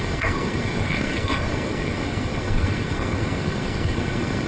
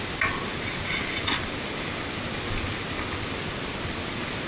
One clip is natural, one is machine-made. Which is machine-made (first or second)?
first